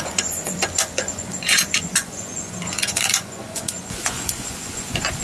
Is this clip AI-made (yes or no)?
yes